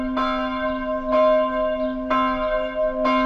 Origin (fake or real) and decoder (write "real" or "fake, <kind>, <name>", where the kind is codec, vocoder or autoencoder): real